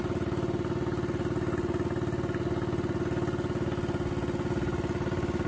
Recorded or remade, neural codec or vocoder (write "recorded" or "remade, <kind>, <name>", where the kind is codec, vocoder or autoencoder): recorded